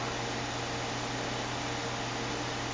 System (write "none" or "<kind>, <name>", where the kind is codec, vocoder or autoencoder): none